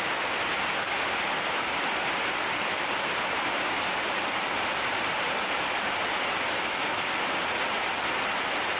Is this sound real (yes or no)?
yes